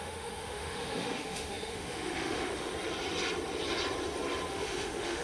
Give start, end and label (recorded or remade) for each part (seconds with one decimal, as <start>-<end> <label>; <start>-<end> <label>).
0.0-2.7 remade; 2.7-4.5 recorded; 4.5-5.2 remade